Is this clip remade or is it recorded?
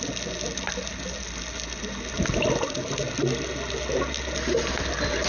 recorded